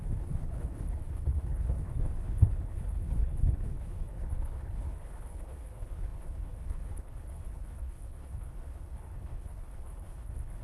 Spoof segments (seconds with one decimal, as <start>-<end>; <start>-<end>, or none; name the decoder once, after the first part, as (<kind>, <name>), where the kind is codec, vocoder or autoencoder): 0.0-10.6 (codec, HILCodec)